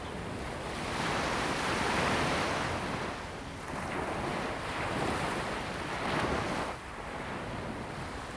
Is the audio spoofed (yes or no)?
no